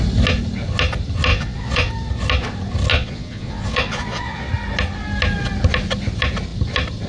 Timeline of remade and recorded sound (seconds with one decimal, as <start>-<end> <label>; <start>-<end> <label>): 0.0-1.3 recorded; 1.3-1.9 remade; 1.9-2.9 recorded; 2.9-4.5 remade; 4.5-7.1 recorded